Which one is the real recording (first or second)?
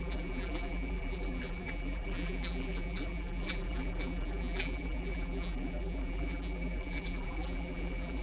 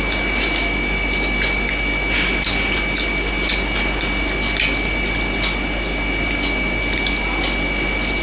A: second